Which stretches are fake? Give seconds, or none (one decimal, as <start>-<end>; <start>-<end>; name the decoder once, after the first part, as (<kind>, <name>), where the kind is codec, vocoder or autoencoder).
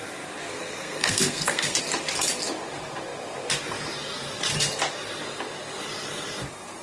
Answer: 0.5-1.8 (codec, SNAC)